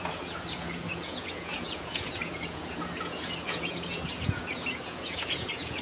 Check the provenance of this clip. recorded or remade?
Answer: remade